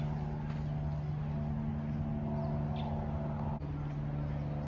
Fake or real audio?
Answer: real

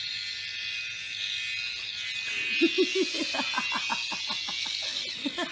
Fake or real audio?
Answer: real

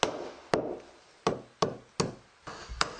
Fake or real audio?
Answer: real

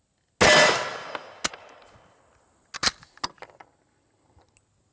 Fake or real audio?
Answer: real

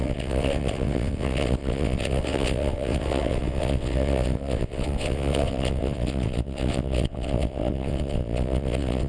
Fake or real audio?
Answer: fake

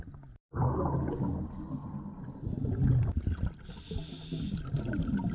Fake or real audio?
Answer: real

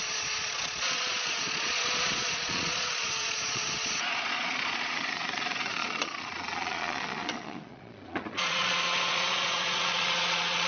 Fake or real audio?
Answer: fake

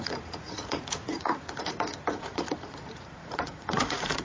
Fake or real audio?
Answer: fake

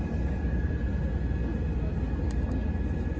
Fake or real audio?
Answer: real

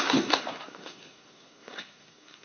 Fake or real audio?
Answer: fake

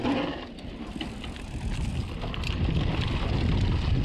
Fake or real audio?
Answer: real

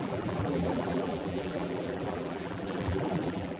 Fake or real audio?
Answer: fake